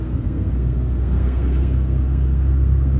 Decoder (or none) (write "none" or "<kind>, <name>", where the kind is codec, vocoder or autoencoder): codec, SNAC